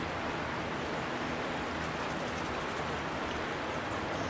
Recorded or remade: recorded